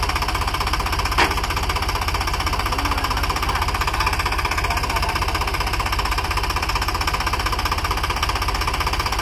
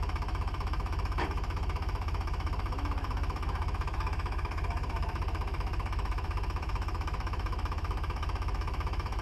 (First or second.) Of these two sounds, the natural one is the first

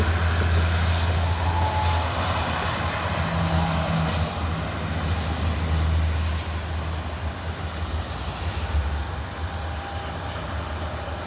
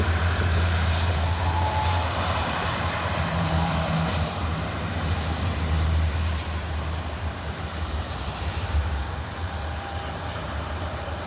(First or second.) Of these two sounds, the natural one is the first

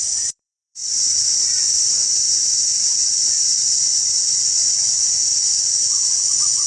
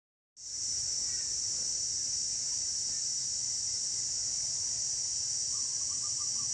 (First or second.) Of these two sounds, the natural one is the second